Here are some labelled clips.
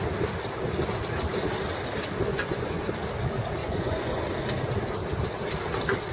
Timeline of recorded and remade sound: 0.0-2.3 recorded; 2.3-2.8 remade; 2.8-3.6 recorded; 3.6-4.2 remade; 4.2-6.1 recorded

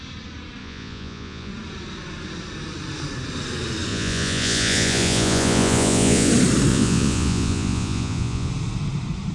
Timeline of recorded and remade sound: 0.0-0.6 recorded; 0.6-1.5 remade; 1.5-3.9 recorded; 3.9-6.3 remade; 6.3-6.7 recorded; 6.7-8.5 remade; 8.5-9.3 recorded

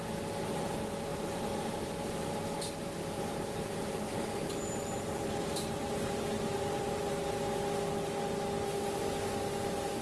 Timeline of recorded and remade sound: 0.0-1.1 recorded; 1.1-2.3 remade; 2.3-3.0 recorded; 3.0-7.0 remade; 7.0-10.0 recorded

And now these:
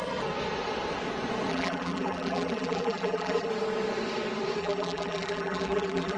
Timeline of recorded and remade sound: 0.0-1.5 recorded; 1.5-3.5 remade; 3.5-4.6 recorded; 4.6-6.2 remade